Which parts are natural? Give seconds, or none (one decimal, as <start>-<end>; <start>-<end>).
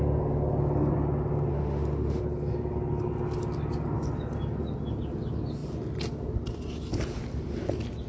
0.0-1.5; 2.2-8.1